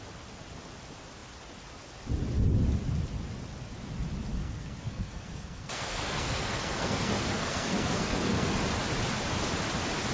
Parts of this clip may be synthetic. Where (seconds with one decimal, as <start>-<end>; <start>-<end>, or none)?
4.3-8.5